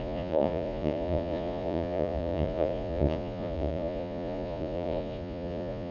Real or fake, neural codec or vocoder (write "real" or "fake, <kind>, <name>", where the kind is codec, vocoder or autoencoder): fake, vocoder, Vocos